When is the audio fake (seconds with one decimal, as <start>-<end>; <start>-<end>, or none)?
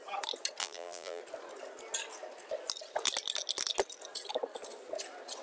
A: 0.6-1.2